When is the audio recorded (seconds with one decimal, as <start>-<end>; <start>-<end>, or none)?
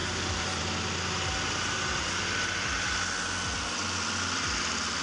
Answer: 0.6-5.0